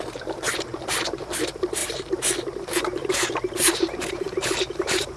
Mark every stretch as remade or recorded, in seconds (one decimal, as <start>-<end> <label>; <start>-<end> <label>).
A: 0.0-5.2 remade